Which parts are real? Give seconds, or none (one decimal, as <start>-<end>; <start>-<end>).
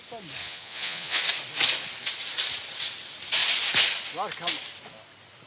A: 0.0-0.4; 1.2-5.5